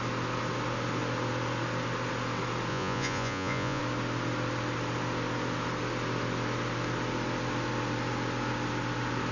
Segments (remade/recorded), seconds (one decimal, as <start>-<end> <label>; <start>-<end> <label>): 0.0-2.7 recorded; 2.7-3.8 remade; 3.8-9.3 recorded